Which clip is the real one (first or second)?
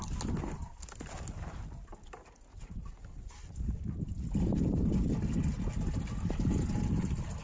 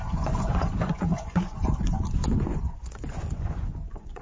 first